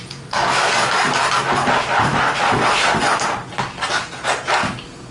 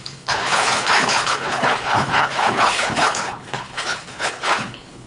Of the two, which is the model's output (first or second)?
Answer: second